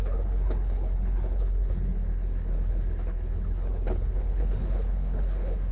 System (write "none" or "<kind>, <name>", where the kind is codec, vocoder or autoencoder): codec, HILCodec